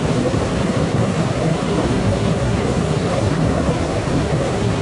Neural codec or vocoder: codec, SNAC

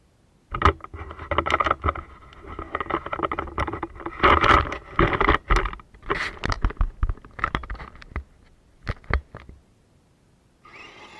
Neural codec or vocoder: none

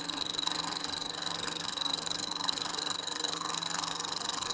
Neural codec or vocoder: codec, SNAC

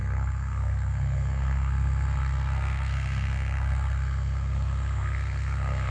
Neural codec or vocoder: codec, SNAC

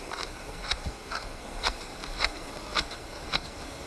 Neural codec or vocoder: codec, SNAC